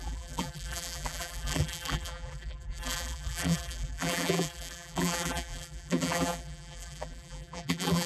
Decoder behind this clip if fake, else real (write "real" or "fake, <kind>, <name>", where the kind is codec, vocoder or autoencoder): fake, vocoder, BigVGAN v2